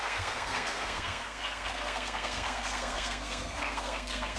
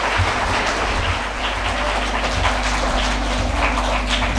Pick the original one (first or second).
second